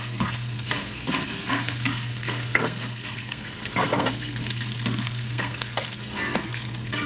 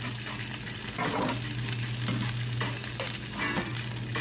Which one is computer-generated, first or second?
first